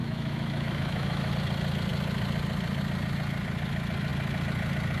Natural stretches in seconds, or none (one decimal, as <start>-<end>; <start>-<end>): 1.3-5.0